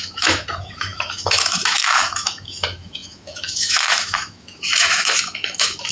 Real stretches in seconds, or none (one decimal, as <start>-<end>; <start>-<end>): none